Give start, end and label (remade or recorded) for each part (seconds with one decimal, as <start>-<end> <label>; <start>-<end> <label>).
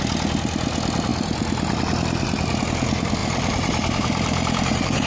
0.0-3.2 recorded; 3.2-5.1 remade